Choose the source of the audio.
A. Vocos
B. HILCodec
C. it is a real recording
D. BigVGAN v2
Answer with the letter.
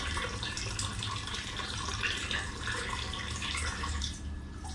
D